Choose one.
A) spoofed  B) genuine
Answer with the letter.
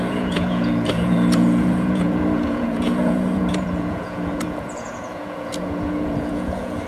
A